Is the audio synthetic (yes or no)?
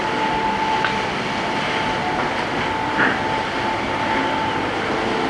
no